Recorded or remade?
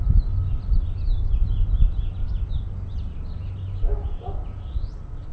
recorded